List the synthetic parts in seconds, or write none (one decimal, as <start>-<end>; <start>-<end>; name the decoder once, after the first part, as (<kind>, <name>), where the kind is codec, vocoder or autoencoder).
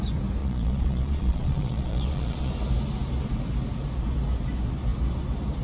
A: 0.4-2.5 (vocoder, Vocos)